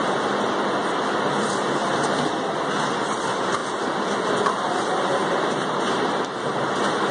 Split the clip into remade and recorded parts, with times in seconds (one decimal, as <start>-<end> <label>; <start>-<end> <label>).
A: 0.0-7.1 recorded